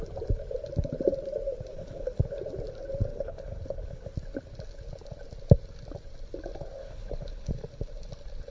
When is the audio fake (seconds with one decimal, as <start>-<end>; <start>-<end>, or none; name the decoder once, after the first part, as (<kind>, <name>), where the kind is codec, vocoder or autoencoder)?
1.7-2.2 (codec, HILCodec); 3.1-4.1; 6.8-7.5